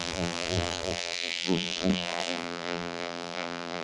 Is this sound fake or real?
fake